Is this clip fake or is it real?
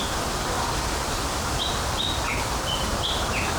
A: real